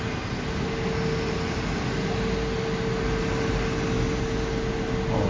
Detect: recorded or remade recorded